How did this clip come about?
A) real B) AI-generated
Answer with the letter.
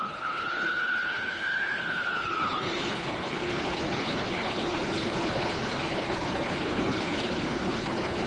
B